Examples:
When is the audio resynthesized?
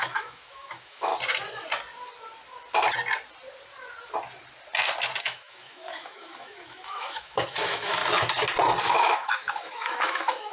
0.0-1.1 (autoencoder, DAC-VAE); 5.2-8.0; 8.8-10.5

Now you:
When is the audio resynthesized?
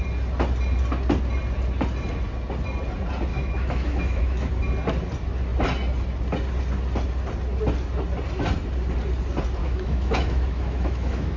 3.3-4.5 (autoencoder, DAC-VAE); 9.6-11.4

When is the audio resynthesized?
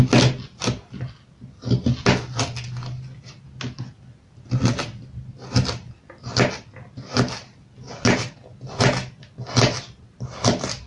none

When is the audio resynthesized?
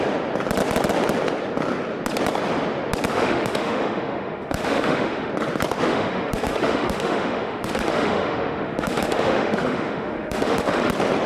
3.1-5.3 (autoencoder, DAC-VAE); 5.9-10.9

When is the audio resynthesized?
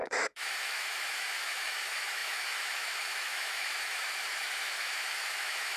0.0-5.8 (autoencoder, DAC-VAE)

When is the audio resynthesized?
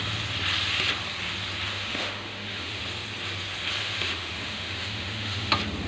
1.7-2.8 (autoencoder, DAC-VAE); 3.8-5.5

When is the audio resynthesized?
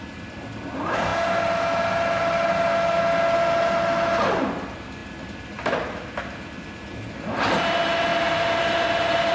none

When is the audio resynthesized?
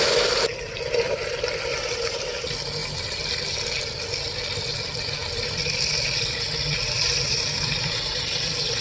none